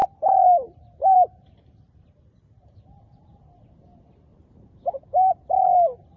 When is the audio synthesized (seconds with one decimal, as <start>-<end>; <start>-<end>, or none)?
0.0-3.7; 4.3-5.1